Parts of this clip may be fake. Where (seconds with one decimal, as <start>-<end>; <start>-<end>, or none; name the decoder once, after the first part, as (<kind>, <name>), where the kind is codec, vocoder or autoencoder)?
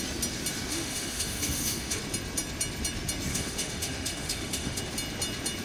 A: 0.7-2.0 (autoencoder, DAC-VAE); 3.3-4.8